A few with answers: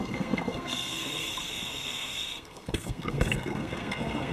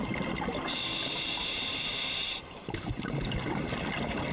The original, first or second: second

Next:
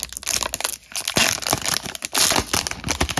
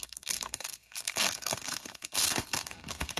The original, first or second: first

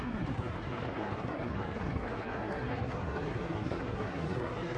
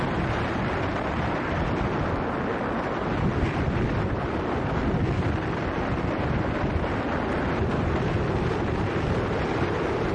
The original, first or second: second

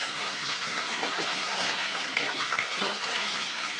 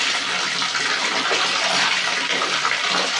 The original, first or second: second